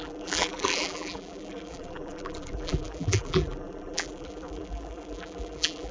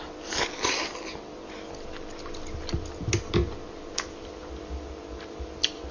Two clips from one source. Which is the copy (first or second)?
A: first